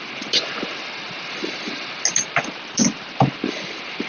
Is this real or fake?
real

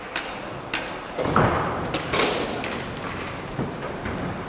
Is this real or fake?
real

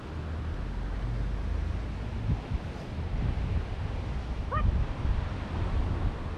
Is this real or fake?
real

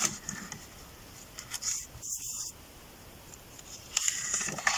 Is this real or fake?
real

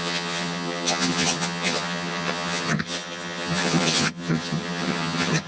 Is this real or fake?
fake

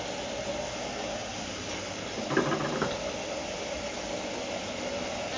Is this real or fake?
real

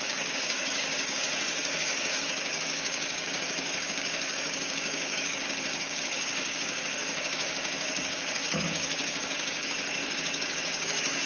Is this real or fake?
fake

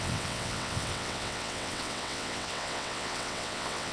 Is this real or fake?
fake